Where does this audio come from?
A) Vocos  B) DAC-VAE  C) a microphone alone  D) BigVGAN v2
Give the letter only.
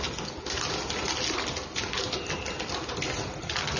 C